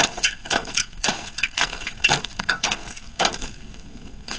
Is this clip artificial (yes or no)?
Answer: yes